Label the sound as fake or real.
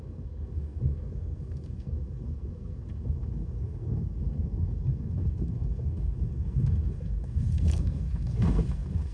fake